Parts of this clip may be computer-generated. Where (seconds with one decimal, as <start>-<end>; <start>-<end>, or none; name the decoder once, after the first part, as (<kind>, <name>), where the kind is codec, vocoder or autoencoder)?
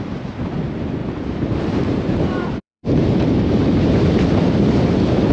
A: 1.0-4.2 (vocoder, BigVGAN v2)